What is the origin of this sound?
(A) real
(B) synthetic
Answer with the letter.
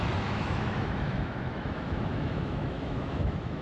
B